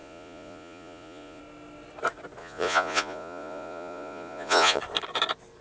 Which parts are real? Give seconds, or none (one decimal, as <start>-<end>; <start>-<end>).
1.4-2.4; 4.8-5.6